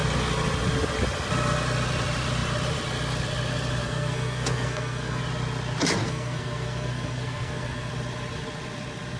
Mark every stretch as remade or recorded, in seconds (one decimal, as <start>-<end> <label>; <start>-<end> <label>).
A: 0.0-3.8 recorded; 3.8-5.2 remade; 5.2-6.0 recorded; 6.0-7.9 remade; 7.9-9.2 recorded